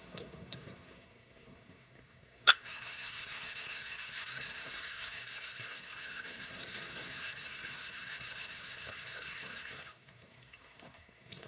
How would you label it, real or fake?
fake